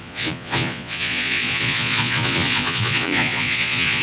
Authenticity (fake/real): fake